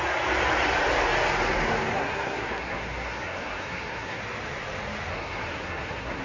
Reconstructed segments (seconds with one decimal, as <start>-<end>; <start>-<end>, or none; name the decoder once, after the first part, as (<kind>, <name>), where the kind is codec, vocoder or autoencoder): 1.9-4.2 (codec, SNAC); 5.1-6.2